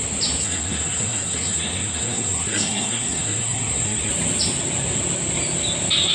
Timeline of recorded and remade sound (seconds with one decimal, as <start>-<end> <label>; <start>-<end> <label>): 0.0-0.4 recorded; 0.4-4.1 remade; 4.1-6.1 recorded